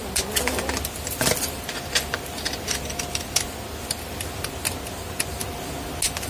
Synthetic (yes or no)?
no